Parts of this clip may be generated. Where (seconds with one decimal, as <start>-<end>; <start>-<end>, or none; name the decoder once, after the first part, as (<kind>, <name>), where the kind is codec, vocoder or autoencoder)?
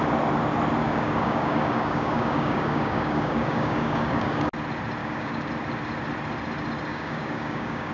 0.8-4.5 (codec, DAC); 5.0-5.5; 6.9-7.9